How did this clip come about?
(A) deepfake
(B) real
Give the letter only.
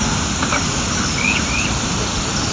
B